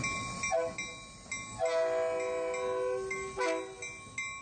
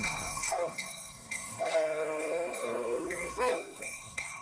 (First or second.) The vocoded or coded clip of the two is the second